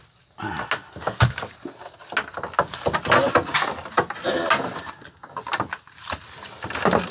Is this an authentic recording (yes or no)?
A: yes